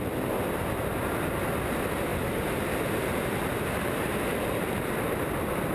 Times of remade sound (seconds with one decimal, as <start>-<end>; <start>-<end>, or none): 2.1-5.3